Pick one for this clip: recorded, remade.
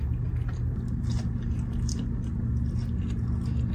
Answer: recorded